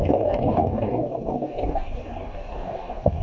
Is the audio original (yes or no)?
no